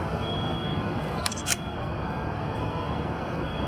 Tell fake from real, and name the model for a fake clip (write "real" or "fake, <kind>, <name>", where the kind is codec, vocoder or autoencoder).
fake, codec, SNAC